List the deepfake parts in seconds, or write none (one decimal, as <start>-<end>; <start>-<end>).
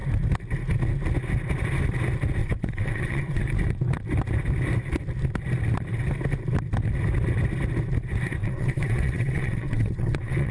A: 2.4-3.4; 8.4-10.5